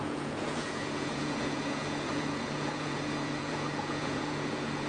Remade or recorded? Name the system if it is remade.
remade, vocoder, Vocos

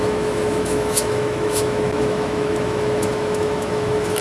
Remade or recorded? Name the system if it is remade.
remade, autoencoder, DAC-VAE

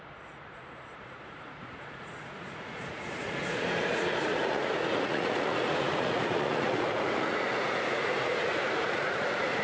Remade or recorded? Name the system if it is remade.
remade, vocoder, Vocos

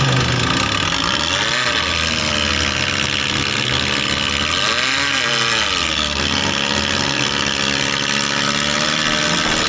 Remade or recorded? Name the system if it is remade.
recorded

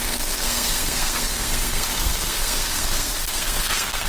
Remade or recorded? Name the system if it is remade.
remade, codec, SNAC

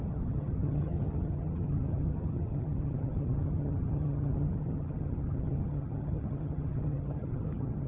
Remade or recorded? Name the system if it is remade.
remade, vocoder, HiFi-GAN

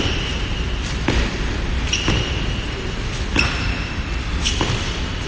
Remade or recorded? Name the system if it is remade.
remade, vocoder, BigVGAN v2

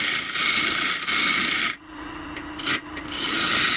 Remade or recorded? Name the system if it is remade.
recorded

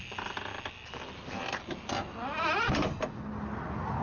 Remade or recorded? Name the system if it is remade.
recorded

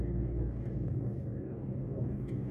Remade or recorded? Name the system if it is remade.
remade, codec, DAC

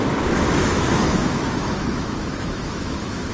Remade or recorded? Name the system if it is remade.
remade, autoencoder, DAC-VAE